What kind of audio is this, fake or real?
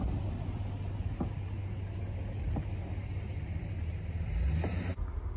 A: real